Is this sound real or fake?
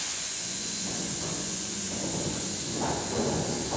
fake